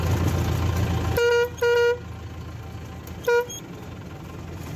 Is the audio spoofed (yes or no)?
no